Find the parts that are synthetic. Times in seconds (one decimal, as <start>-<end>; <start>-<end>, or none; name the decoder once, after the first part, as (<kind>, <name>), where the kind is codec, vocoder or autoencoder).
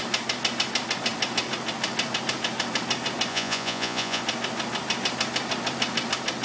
3.3-4.2 (vocoder, Vocos)